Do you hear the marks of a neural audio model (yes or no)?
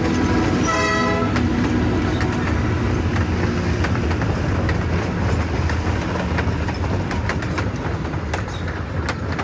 no